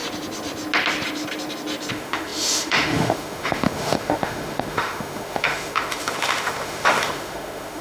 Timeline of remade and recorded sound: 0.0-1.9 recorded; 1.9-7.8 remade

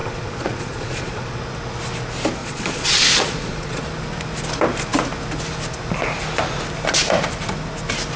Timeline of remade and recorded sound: 0.0-1.4 remade; 1.4-2.4 recorded; 2.4-3.8 remade; 3.8-8.2 recorded

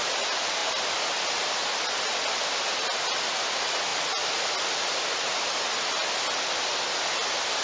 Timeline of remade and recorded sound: 0.0-7.6 recorded

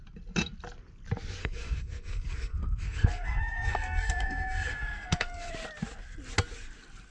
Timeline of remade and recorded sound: 0.0-1.4 recorded; 1.4-5.5 remade; 5.5-7.1 recorded

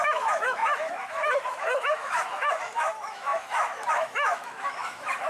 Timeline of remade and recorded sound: 0.0-5.3 remade

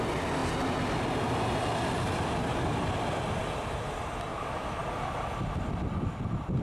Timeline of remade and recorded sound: 0.0-4.3 recorded; 4.3-4.8 remade; 4.8-6.6 recorded

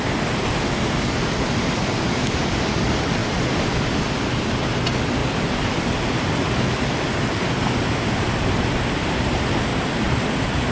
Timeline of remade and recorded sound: 0.0-5.2 recorded; 5.2-8.7 remade; 8.7-9.7 recorded; 9.7-10.7 remade

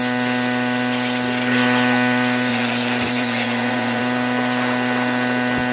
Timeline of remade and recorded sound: 0.0-2.5 recorded; 2.5-4.0 remade; 4.0-5.7 recorded